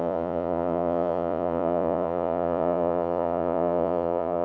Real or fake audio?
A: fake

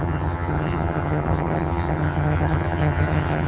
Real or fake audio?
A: fake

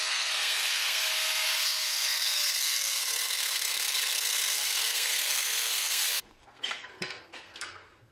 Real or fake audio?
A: fake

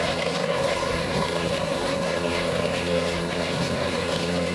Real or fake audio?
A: fake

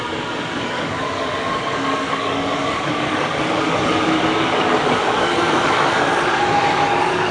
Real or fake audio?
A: fake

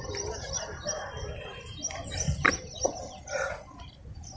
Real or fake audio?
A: real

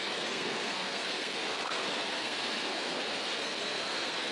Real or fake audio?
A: fake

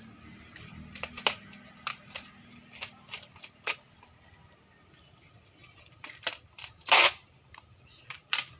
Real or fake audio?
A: real